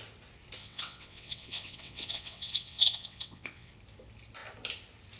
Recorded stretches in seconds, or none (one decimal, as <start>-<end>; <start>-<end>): 0.0-0.6; 3.7-5.2